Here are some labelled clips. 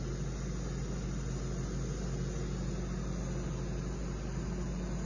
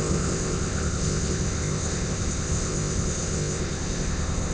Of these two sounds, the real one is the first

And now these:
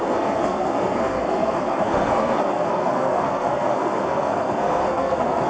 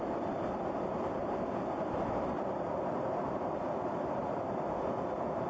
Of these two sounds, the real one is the second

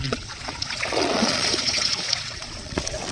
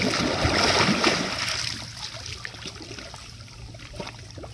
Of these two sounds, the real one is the second